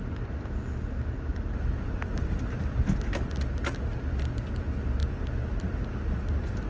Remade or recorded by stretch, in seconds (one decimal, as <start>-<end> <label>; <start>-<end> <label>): 0.0-1.3 recorded; 1.3-3.3 remade; 3.3-5.0 recorded; 5.0-5.8 remade; 5.8-6.7 recorded